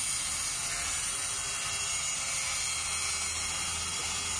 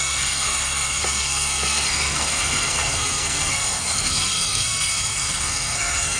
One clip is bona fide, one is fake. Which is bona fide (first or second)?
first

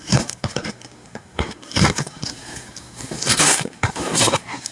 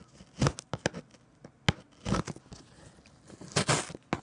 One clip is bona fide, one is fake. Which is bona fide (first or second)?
second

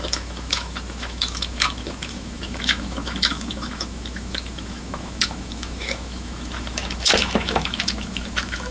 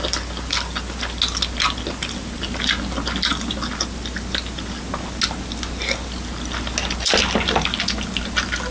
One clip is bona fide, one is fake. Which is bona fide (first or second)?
second